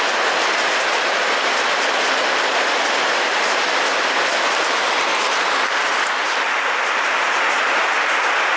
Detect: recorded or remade recorded